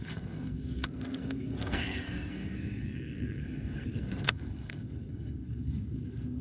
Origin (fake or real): fake